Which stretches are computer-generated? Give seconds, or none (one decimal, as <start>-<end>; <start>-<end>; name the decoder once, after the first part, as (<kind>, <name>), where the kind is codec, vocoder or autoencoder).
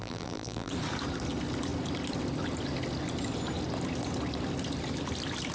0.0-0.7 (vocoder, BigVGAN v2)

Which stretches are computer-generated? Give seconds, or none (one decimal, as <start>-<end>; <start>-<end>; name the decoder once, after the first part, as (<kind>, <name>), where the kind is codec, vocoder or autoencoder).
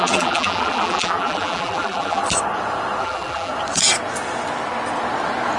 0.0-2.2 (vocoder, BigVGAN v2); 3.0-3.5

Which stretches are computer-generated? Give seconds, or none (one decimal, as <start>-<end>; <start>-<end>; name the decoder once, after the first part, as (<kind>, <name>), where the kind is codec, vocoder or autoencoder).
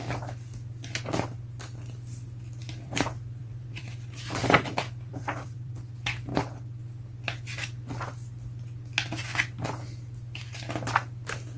2.6-3.8 (vocoder, BigVGAN v2); 4.4-5.7